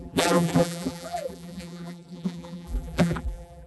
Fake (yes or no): yes